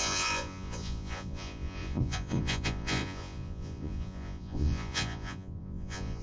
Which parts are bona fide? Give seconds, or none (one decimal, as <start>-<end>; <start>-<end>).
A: none